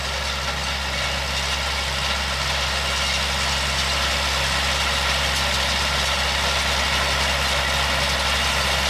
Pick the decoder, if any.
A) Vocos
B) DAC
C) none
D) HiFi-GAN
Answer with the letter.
C